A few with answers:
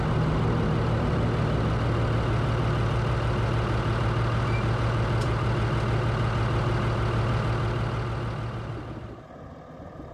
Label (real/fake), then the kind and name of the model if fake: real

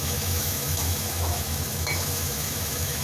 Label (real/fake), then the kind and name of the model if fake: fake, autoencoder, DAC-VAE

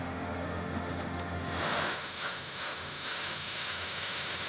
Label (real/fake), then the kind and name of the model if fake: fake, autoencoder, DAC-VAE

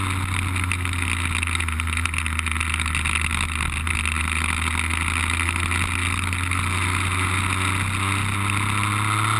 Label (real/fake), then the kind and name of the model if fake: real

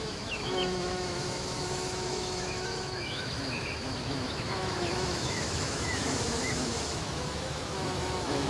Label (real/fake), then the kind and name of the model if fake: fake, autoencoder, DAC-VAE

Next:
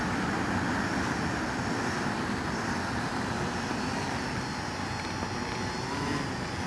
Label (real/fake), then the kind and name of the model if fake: real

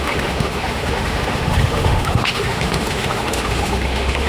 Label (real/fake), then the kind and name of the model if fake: fake, autoencoder, DAC-VAE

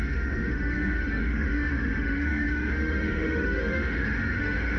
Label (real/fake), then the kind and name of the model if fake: fake, autoencoder, DAC-VAE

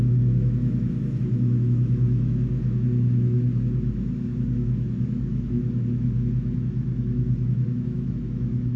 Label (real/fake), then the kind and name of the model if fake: fake, autoencoder, DAC-VAE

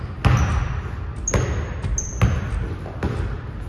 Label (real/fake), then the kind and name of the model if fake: real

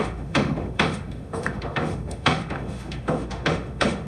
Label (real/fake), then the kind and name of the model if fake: fake, autoencoder, DAC-VAE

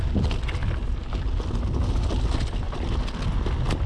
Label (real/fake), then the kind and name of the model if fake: real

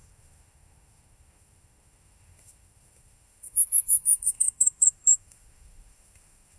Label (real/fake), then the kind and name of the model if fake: fake, autoencoder, DAC-VAE